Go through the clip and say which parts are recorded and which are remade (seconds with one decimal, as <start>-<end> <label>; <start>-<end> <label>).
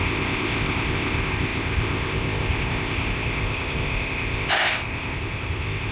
0.0-5.9 remade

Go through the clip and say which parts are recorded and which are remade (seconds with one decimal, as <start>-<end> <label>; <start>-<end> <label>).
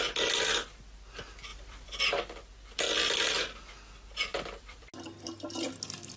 0.0-1.5 recorded; 1.5-2.0 remade; 2.0-4.3 recorded; 4.3-4.9 remade; 4.9-6.2 recorded